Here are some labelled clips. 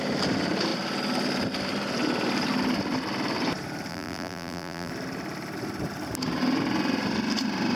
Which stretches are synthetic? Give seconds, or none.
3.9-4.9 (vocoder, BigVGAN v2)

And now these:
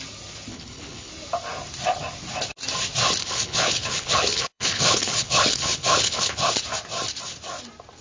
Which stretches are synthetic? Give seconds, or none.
0.5-1.1 (codec, HILCodec); 3.2-6.5